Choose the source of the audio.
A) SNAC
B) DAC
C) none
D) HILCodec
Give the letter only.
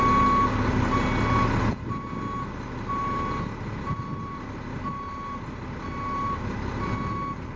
C